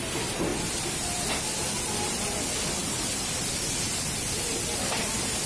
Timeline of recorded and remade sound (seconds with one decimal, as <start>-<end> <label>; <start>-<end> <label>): 0.0-0.5 recorded; 0.5-1.3 remade; 1.3-2.8 recorded; 2.8-3.6 remade; 3.6-5.5 recorded